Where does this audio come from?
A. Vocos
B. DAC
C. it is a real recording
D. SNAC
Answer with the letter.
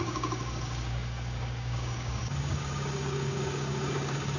B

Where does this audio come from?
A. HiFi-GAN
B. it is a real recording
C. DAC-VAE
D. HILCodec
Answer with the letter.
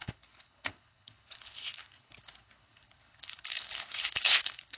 D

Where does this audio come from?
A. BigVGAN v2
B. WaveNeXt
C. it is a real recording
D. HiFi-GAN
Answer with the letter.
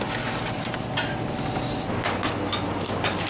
C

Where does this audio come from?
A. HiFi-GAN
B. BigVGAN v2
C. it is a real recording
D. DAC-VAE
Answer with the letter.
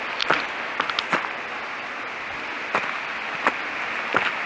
C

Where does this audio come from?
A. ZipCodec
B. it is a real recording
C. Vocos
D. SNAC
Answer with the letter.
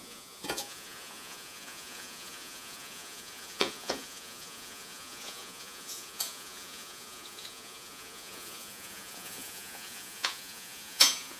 C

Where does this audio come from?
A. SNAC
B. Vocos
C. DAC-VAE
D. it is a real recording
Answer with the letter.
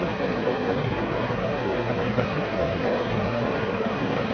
A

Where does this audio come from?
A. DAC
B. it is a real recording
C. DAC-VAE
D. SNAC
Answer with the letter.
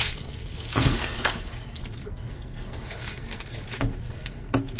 D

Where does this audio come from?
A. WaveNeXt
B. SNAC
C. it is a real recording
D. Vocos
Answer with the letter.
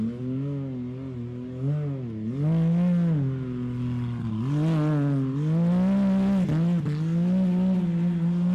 C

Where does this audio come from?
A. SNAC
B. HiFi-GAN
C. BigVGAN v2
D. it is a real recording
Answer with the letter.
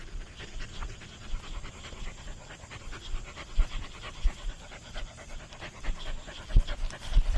D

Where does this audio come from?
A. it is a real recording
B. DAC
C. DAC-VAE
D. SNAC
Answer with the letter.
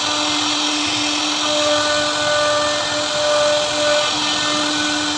A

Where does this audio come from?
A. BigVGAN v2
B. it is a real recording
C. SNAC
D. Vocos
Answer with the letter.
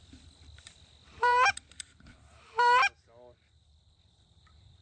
A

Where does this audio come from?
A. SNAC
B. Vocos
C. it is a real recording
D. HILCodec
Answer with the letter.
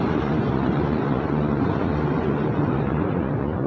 B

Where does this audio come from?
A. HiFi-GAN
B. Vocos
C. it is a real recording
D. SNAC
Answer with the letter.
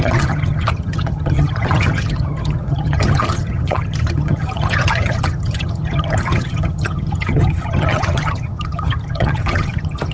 A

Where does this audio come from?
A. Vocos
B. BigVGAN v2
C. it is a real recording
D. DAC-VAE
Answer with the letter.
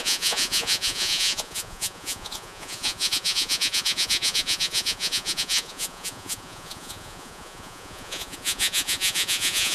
A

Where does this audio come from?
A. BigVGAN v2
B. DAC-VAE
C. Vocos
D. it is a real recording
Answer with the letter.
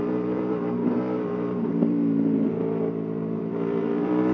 A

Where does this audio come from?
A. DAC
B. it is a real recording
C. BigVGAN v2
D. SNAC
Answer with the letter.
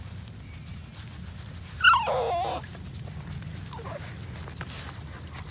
B